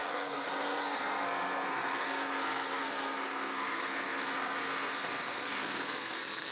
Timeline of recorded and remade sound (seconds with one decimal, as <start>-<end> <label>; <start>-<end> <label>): 0.0-6.5 remade